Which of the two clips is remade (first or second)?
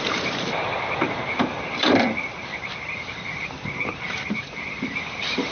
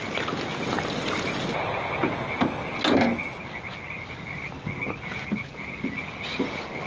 first